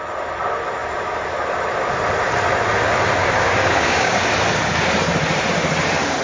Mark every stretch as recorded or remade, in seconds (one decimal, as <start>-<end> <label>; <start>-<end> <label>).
0.0-3.2 recorded; 3.2-4.2 remade; 4.2-6.2 recorded